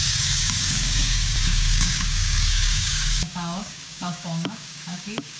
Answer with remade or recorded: remade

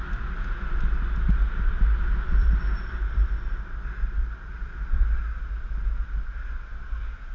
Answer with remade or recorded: recorded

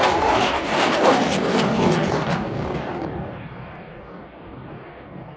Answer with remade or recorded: remade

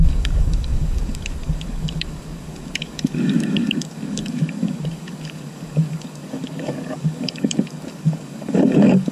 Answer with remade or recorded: remade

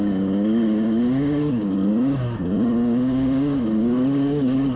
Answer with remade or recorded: remade